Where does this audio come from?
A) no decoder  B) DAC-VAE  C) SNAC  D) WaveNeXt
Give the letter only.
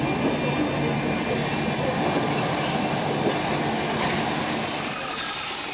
A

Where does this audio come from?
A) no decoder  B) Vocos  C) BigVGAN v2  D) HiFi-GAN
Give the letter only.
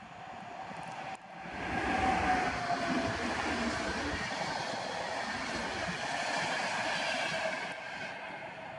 A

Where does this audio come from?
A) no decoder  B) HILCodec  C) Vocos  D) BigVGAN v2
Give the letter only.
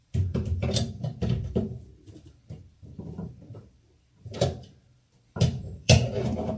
D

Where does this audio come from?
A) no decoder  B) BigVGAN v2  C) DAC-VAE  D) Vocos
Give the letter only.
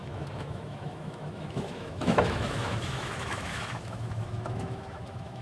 C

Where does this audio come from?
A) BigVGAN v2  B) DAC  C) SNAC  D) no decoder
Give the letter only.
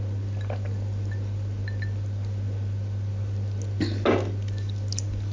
D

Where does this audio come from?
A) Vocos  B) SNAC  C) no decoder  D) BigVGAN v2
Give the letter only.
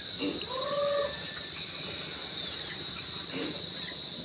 C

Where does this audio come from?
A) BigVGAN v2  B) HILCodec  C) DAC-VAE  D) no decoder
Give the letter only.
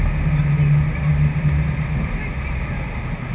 D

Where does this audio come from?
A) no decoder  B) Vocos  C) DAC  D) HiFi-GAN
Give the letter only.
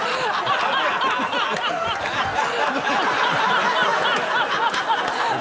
A